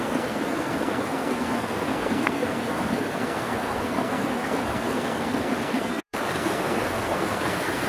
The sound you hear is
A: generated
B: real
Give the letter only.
A